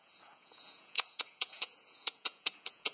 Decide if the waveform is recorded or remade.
remade